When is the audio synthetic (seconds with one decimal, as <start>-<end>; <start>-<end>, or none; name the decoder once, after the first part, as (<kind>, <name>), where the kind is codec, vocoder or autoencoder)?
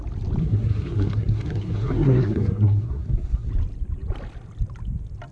0.4-3.5 (codec, SNAC)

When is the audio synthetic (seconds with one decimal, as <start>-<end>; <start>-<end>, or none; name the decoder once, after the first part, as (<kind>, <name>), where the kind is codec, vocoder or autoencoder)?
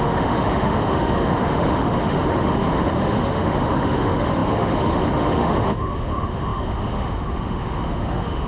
0.0-8.5 (autoencoder, DAC-VAE)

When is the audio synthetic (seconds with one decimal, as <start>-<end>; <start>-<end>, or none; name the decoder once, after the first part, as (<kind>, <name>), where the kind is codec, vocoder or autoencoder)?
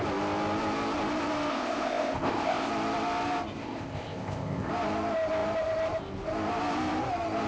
1.5-2.7 (codec, ZipCodec); 3.6-4.7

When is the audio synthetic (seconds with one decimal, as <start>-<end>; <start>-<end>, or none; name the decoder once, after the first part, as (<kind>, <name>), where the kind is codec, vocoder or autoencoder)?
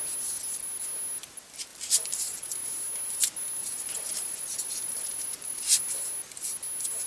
1.7-2.7 (vocoder, BigVGAN v2); 3.6-5.8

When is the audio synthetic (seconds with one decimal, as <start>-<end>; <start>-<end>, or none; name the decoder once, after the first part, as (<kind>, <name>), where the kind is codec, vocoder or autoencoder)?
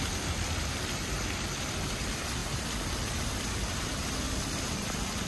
0.0-2.4 (vocoder, BigVGAN v2); 3.1-5.3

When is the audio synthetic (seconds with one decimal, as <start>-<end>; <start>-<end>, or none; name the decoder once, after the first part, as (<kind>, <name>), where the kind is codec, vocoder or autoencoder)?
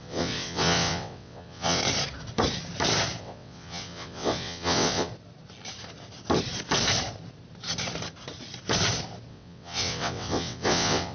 0.0-1.8 (vocoder, WaveNeXt); 3.2-5.1; 9.3-11.1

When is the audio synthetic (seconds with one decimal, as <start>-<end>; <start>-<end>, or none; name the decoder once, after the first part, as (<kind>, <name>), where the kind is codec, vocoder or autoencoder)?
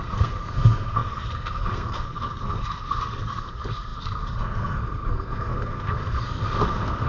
0.0-7.1 (codec, SNAC)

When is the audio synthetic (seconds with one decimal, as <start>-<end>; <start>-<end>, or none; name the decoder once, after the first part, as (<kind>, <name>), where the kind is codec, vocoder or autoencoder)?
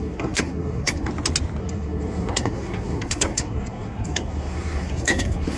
0.0-1.1 (codec, SNAC); 1.6-5.6